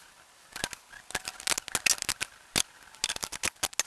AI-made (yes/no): no